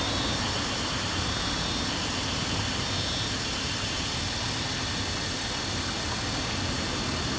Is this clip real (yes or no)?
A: yes